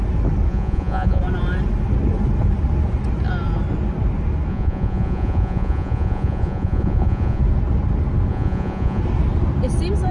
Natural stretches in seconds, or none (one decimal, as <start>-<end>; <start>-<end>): 0.0-0.5; 1.2-4.5; 7.4-8.3; 9.0-10.1